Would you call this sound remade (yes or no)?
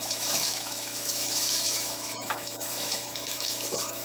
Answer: yes